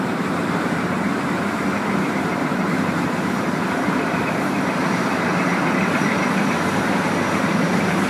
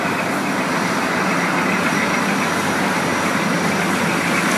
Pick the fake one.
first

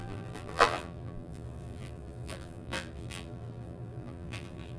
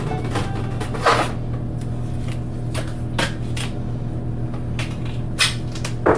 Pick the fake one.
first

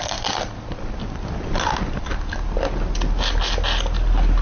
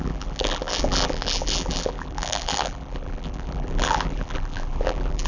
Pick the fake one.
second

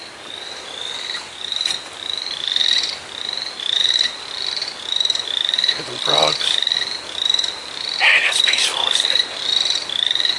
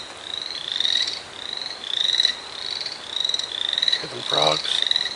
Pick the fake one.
first